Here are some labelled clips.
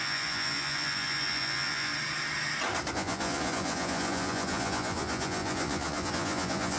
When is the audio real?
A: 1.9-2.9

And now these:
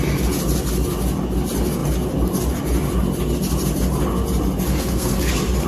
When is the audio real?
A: 0.0-4.7; 5.3-5.7